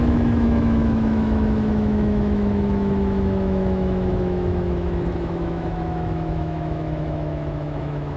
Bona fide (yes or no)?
no